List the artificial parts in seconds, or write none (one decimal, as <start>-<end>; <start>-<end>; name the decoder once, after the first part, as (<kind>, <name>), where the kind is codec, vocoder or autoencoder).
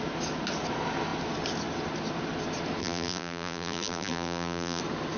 2.8-4.8 (vocoder, BigVGAN v2)